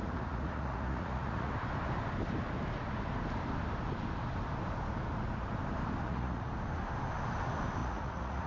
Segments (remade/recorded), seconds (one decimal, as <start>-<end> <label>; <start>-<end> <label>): 0.0-1.5 remade; 1.5-6.0 recorded; 6.0-6.5 remade; 6.5-7.8 recorded; 7.8-8.5 remade